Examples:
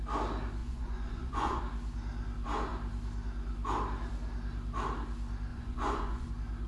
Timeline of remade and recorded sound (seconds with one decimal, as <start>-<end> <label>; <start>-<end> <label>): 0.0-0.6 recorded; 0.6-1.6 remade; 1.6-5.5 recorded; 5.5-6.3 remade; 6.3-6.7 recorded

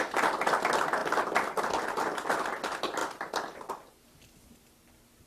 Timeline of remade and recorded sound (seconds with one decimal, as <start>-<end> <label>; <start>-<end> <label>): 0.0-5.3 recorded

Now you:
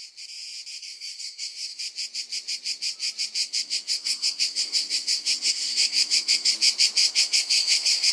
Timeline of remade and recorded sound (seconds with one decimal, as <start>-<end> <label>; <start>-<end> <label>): 0.0-0.8 recorded; 0.8-1.8 remade; 1.8-3.4 recorded; 3.4-6.5 remade; 6.5-7.0 recorded; 7.0-8.1 remade

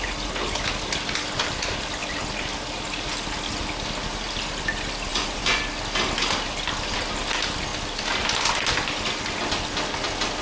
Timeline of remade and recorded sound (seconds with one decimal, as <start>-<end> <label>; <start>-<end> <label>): 0.0-5.1 recorded; 5.1-5.6 remade; 5.6-10.4 recorded